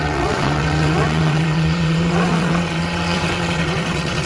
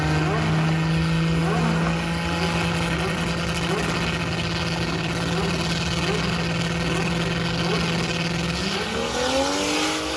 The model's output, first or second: first